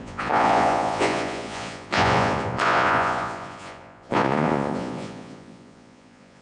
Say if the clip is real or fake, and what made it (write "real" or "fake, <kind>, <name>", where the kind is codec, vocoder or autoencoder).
fake, vocoder, Vocos